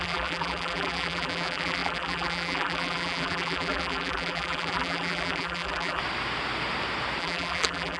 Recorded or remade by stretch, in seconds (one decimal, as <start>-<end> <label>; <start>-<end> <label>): 0.0-6.0 remade; 6.0-7.2 recorded; 7.2-8.0 remade